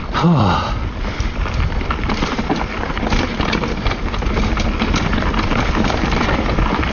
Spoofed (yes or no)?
yes